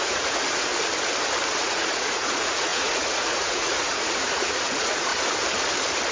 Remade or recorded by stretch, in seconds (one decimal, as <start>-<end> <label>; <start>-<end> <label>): 0.0-0.7 remade; 0.7-1.6 recorded; 1.6-5.1 remade; 5.1-6.1 recorded